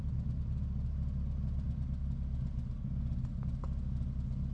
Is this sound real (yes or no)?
yes